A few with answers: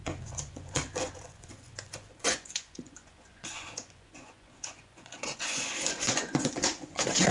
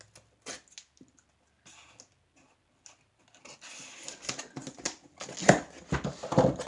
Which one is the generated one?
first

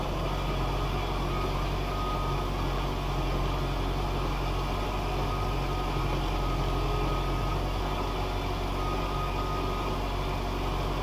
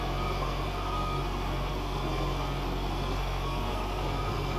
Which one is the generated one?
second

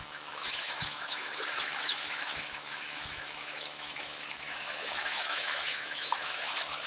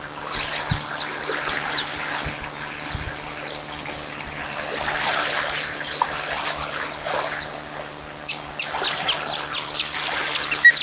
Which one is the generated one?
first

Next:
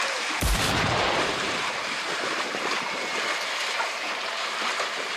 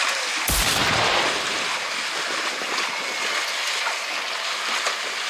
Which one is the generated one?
first